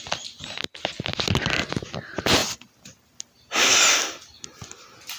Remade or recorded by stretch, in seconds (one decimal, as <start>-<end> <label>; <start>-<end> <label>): 0.0-5.2 recorded